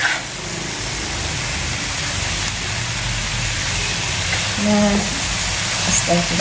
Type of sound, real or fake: real